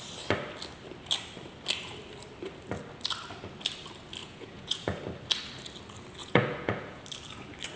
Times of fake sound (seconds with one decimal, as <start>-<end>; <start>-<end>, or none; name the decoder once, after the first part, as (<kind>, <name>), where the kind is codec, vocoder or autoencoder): 4.2-5.0 (vocoder, Vocos); 6.2-7.0